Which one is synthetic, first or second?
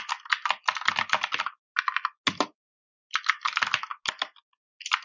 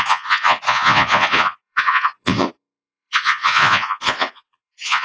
second